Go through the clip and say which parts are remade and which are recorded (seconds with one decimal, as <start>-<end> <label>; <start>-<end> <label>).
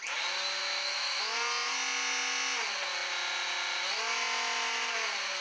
0.0-0.6 recorded; 0.6-1.2 remade; 1.2-5.4 recorded